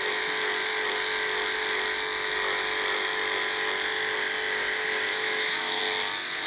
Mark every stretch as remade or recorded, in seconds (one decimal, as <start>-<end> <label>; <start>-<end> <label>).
0.0-5.1 recorded; 5.1-5.8 remade; 5.8-6.5 recorded